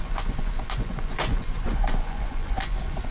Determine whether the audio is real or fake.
fake